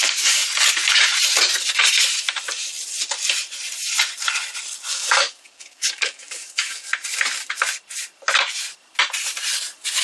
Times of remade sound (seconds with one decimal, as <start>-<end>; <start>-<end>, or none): 0.0-0.4; 4.9-6.9